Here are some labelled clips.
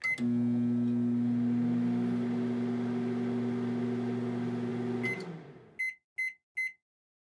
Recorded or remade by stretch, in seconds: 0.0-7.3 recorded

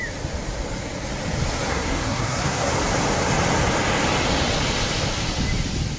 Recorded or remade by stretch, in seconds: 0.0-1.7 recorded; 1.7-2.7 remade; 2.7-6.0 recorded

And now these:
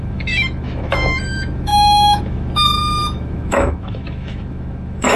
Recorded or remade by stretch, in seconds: 0.0-5.2 remade

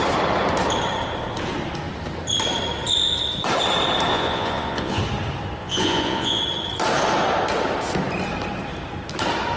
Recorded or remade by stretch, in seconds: 0.0-4.1 recorded; 4.1-5.0 remade; 5.0-5.6 recorded; 5.6-6.4 remade; 6.4-9.6 recorded

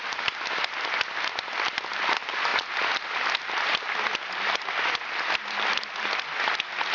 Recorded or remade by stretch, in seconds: 0.0-6.9 recorded